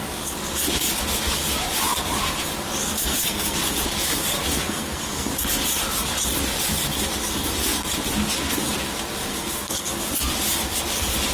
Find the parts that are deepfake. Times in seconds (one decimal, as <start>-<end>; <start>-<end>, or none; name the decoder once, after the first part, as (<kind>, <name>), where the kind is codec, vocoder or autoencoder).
2.9-3.6 (codec, SNAC); 4.5-5.3; 9.3-9.9